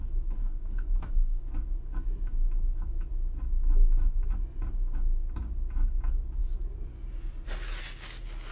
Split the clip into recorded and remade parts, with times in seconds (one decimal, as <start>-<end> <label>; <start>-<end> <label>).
0.0-0.4 recorded; 0.4-1.4 remade; 1.4-8.5 recorded